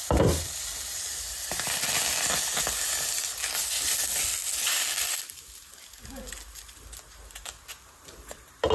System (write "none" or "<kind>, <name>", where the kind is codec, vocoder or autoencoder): none